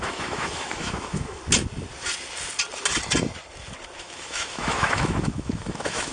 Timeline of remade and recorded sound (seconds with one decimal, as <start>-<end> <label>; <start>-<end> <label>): 0.0-1.4 remade; 1.4-4.0 recorded; 4.0-6.1 remade